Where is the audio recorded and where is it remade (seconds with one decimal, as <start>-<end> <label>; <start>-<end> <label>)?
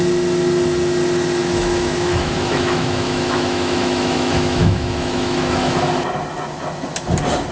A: 0.0-1.4 recorded; 1.4-5.8 remade; 5.8-7.5 recorded